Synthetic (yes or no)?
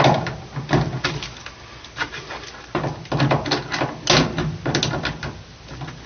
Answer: no